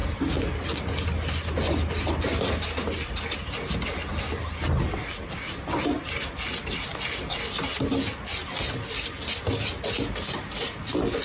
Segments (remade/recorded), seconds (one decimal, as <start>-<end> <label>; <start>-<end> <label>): 0.0-11.2 recorded